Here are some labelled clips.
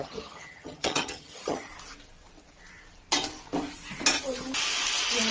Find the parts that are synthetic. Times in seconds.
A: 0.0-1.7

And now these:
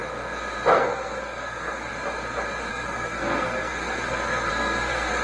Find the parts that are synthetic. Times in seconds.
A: 0.7-1.9; 2.7-5.2

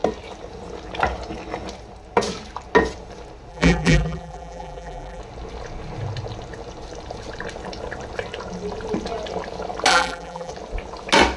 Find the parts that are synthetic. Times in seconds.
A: 3.5-5.2; 9.9-10.5

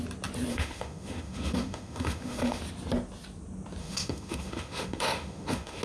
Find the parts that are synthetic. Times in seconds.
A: 0.5-2.6; 3.8-5.8

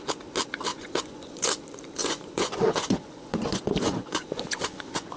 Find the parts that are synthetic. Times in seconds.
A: 0.7-1.5; 2.0-5.2

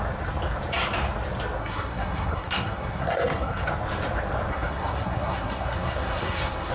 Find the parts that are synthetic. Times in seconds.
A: 1.6-3.7; 4.5-6.7

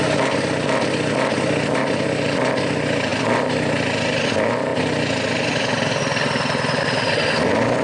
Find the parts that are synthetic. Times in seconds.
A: none